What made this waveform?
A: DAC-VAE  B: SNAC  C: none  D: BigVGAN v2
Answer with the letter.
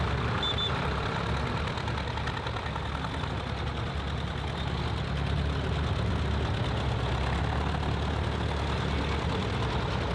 C